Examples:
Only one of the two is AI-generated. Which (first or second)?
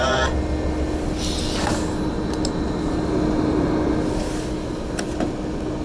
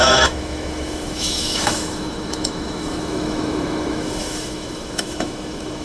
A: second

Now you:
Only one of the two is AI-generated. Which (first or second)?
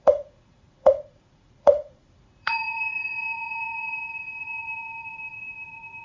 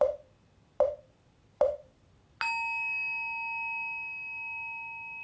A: first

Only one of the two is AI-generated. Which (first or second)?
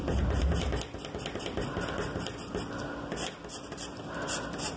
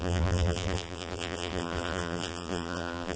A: second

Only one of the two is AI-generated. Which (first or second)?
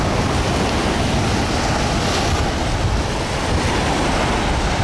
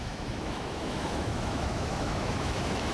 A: second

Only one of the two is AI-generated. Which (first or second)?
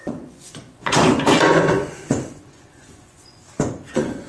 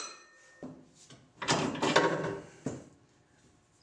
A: first